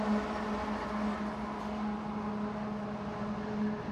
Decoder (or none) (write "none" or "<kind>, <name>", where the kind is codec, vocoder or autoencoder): none